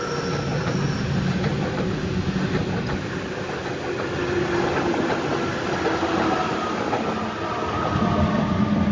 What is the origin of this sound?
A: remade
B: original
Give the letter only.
B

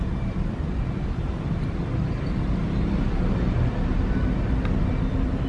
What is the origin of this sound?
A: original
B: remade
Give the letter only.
B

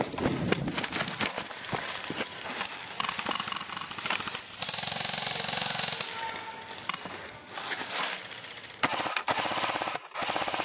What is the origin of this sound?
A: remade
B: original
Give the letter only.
B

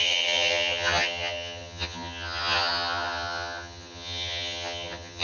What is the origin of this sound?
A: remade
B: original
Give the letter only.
A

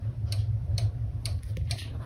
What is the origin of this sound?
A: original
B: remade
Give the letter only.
B